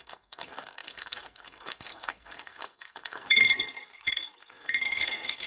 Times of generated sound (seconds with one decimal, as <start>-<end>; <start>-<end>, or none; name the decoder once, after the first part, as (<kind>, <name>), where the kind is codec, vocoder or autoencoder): 0.0-5.5 (codec, SNAC)